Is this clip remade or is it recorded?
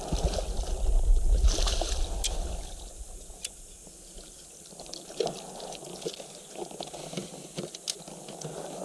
recorded